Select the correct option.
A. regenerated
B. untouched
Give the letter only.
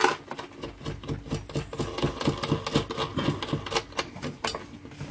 B